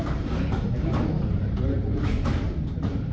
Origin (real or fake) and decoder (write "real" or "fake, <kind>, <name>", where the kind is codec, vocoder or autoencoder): fake, vocoder, BigVGAN v2